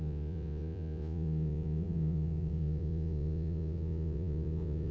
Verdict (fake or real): fake